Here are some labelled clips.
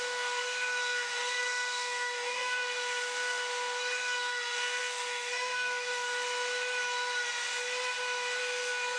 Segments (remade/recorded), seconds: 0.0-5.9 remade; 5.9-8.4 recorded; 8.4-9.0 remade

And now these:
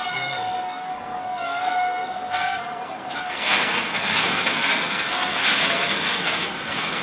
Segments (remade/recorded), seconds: 0.0-7.0 remade

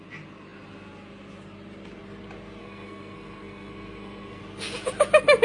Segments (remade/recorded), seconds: 0.0-2.6 recorded; 2.6-4.4 remade; 4.4-5.4 recorded

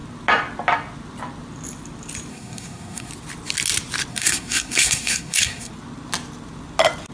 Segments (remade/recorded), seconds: 0.0-2.3 recorded; 2.3-3.1 remade; 3.1-4.1 recorded; 4.1-5.7 remade; 5.7-7.1 recorded

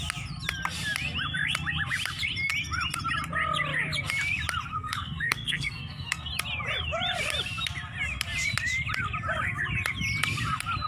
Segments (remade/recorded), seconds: 0.0-4.7 recorded; 4.7-6.3 remade; 6.3-10.9 recorded

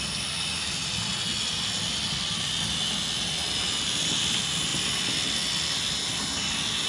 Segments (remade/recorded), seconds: 0.0-6.9 recorded

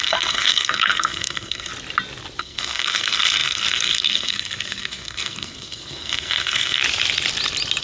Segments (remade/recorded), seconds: 0.0-1.7 remade; 1.7-2.4 recorded; 2.4-6.8 remade; 6.8-7.8 recorded

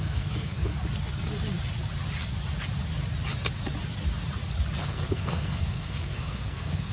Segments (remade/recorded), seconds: 0.0-0.7 remade; 0.7-4.8 recorded; 4.8-6.9 remade